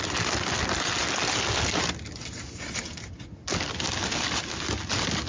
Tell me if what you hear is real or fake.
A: real